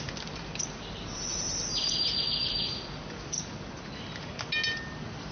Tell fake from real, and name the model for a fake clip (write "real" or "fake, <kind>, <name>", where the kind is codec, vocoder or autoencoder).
real